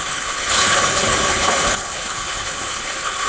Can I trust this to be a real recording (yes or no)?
no